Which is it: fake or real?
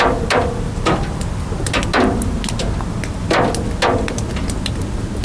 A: real